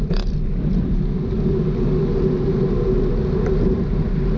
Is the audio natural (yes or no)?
yes